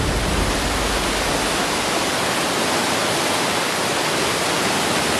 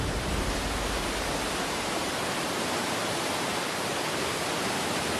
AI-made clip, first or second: second